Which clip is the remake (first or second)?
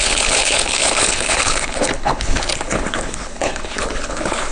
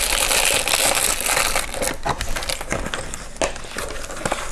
first